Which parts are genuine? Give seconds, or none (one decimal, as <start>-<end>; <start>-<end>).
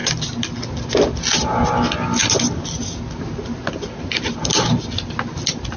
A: 0.0-5.8